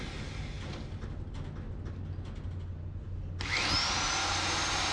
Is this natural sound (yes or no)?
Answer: yes